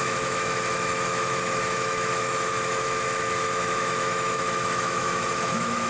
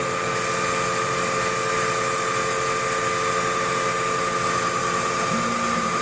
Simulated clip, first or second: first